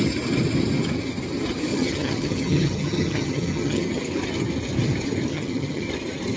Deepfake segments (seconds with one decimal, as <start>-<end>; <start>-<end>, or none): 1.7-4.0; 5.3-5.9